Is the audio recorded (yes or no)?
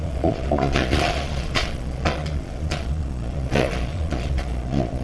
no